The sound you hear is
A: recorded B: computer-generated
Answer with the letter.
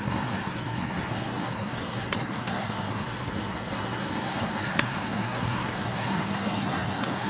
B